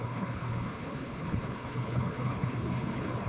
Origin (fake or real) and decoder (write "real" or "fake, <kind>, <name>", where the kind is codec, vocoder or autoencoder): fake, codec, HILCodec